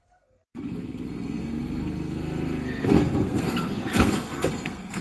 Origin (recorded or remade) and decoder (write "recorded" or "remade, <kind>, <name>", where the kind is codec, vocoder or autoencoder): remade, codec, SNAC